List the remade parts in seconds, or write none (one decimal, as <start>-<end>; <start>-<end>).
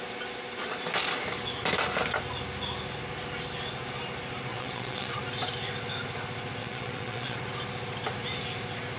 4.5-5.2; 6.6-7.4